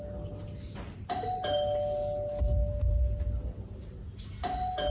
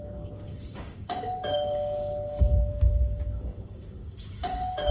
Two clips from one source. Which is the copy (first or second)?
second